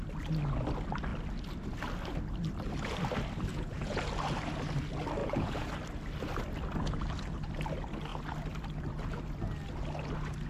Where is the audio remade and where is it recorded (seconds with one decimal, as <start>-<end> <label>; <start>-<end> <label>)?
0.0-3.5 recorded; 3.5-4.0 remade; 4.0-5.2 recorded; 5.2-5.7 remade; 5.7-10.5 recorded